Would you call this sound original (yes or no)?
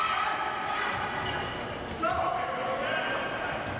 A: yes